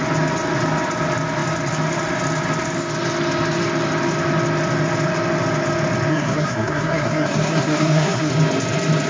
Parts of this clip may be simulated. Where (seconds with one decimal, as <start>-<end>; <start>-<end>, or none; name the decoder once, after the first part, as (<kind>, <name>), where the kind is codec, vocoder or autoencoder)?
6.1-8.3 (codec, SNAC)